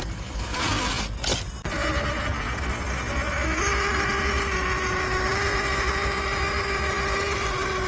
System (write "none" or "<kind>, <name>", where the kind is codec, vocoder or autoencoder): none